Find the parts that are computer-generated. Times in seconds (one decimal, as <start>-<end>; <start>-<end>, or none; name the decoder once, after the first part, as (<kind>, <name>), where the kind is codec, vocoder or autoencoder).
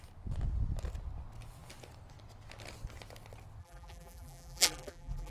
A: 3.6-5.3 (vocoder, BigVGAN v2)